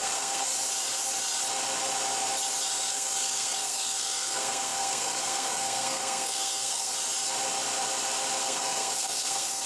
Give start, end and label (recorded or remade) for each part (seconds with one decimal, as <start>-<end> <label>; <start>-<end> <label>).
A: 0.0-0.5 remade; 0.5-2.9 recorded; 2.9-6.9 remade; 6.9-8.4 recorded; 8.4-9.7 remade